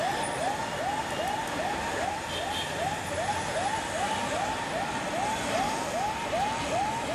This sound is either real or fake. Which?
real